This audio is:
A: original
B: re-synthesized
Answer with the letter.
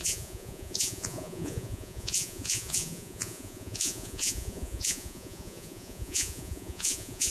B